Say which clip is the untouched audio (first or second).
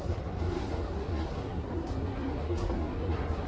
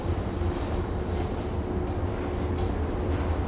second